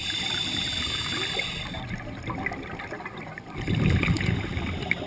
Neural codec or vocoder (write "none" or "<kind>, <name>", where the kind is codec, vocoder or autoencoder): none